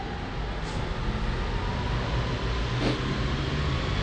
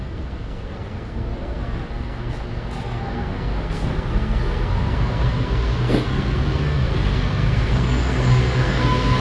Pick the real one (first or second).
first